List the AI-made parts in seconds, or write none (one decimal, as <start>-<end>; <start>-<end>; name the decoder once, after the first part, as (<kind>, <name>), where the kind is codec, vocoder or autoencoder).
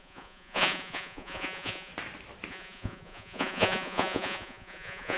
0.0-1.9 (vocoder, Vocos); 2.5-5.2